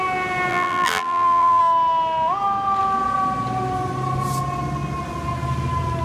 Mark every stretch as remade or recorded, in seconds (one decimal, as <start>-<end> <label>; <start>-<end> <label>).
0.0-0.5 recorded; 0.5-1.6 remade; 1.6-6.0 recorded